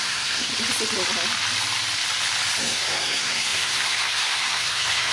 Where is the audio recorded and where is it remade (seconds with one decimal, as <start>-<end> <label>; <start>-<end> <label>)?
0.0-0.5 remade; 0.5-2.6 recorded; 2.6-5.1 remade